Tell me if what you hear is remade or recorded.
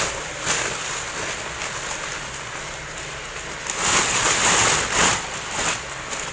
recorded